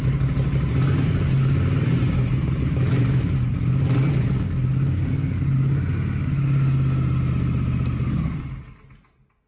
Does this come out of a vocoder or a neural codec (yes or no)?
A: no